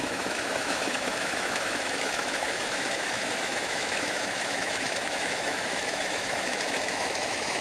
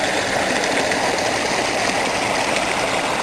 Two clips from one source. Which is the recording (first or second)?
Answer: second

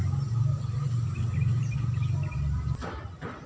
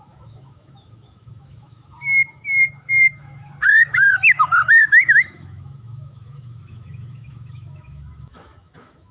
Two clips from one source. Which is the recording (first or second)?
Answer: first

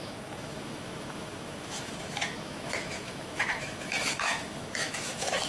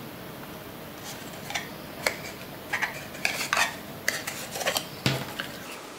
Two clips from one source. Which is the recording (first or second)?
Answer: second